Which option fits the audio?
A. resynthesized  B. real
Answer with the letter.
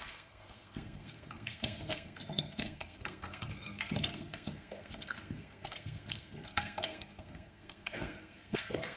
A